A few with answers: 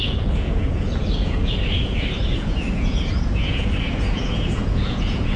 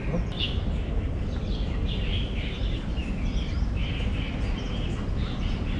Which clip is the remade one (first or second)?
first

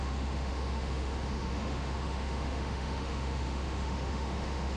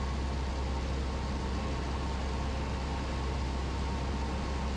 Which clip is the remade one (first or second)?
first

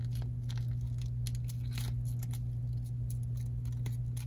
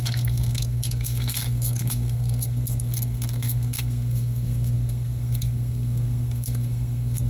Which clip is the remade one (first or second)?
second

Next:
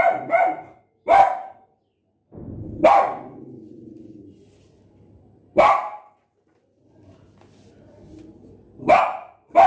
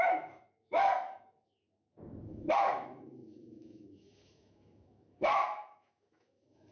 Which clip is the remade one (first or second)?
second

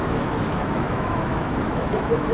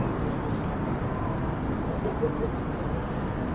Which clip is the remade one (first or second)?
first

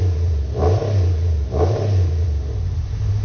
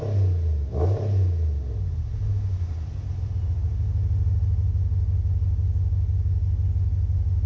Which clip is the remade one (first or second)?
first